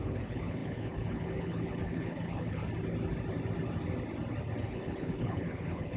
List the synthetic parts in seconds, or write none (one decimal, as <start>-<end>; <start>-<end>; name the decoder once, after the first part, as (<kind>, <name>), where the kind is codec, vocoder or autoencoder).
0.0-2.6 (codec, HILCodec); 4.6-6.0

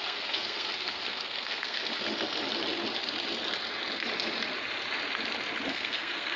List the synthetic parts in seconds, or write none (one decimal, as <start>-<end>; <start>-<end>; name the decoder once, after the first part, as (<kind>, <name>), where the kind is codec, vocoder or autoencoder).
0.0-1.9 (codec, SNAC); 5.7-6.4

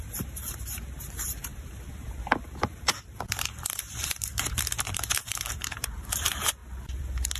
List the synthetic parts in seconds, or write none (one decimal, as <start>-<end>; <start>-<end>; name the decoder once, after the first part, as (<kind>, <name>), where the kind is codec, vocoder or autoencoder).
0.0-6.6 (vocoder, BigVGAN v2)

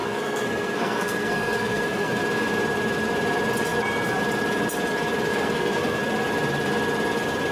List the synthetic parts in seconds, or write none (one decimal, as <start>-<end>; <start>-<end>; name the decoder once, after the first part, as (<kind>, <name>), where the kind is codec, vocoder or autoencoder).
0.0-2.2 (codec, SNAC); 5.3-6.0

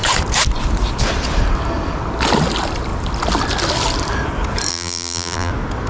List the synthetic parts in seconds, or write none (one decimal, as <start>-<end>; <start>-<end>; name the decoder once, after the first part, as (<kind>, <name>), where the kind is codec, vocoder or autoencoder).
4.7-5.5 (vocoder, BigVGAN v2)

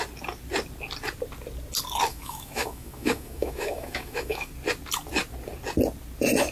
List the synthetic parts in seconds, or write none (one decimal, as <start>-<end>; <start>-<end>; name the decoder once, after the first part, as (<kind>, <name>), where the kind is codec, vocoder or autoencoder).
2.1-4.5 (autoencoder, DAC-VAE)